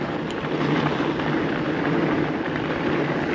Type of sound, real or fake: real